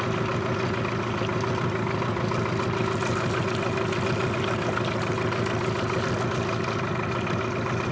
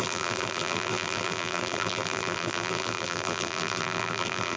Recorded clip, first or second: first